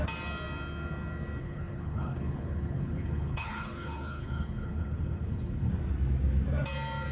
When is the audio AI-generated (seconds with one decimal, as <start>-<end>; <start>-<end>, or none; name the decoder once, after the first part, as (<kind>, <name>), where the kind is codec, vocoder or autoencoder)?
1.4-5.7 (codec, HILCodec)